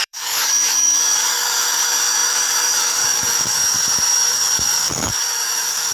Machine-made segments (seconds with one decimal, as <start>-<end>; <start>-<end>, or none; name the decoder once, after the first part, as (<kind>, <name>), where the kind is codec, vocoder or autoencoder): 0.0-5.9 (codec, DAC)